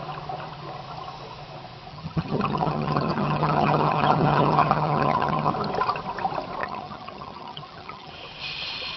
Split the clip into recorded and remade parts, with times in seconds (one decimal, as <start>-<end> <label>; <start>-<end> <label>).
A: 0.0-1.9 recorded; 1.9-5.5 remade; 5.5-6.6 recorded; 6.6-8.1 remade; 8.1-9.0 recorded